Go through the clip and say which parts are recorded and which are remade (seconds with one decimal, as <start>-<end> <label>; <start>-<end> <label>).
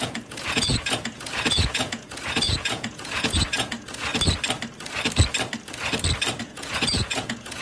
0.0-4.1 remade; 4.1-6.4 recorded; 6.4-7.6 remade